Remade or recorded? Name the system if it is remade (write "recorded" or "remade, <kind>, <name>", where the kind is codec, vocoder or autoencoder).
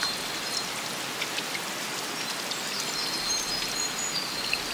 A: recorded